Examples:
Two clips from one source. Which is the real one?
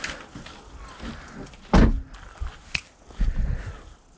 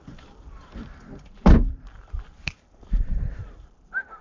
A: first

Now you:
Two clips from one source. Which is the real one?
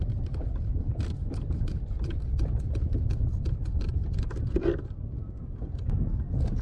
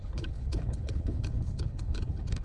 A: first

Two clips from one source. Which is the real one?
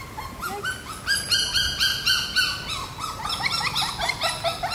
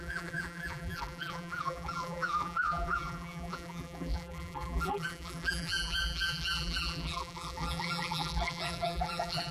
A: first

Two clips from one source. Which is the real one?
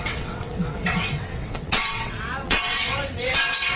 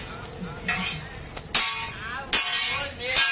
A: second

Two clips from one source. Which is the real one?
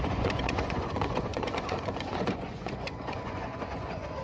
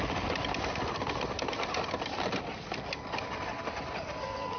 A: second